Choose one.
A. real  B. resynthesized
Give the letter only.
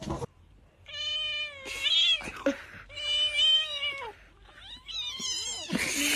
A